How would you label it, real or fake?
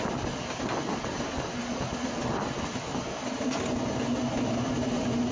real